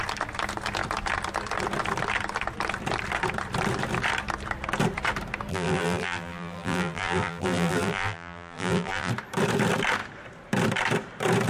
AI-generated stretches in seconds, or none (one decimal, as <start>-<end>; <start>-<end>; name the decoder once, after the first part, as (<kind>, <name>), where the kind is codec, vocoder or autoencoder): 5.5-9.1 (vocoder, BigVGAN v2)

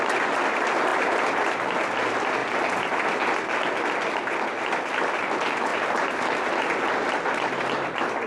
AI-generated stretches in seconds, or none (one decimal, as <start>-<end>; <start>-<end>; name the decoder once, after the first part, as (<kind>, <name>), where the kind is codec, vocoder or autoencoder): 0.9-1.5 (vocoder, BigVGAN v2)